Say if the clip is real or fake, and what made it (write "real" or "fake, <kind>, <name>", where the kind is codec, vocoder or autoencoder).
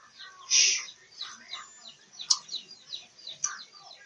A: real